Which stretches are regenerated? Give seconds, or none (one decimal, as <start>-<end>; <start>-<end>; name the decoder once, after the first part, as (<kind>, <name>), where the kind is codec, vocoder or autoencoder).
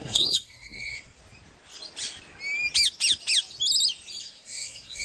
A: 0.0-1.2 (codec, SNAC); 4.2-5.0